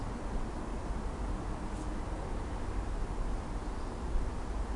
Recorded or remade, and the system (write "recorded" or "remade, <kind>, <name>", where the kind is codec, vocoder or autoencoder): recorded